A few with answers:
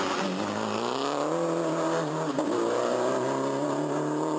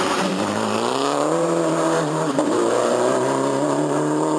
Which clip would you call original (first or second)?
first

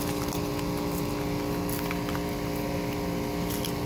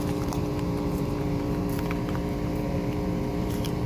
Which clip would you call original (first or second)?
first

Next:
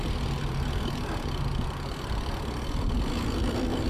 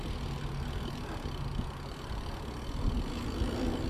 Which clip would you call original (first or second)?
second